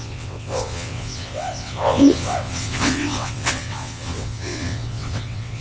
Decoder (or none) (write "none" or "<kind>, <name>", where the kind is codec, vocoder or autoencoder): vocoder, WaveNeXt